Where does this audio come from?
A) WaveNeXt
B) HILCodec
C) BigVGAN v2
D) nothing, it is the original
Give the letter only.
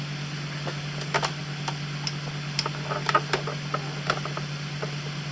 D